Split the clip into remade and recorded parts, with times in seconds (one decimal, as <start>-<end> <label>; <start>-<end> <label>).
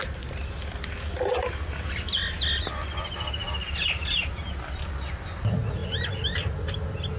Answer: 0.0-7.2 recorded